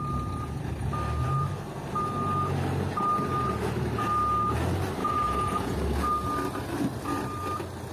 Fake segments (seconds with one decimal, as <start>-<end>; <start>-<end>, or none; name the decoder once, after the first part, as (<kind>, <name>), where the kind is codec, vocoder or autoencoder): 5.0-5.8 (vocoder, Vocos)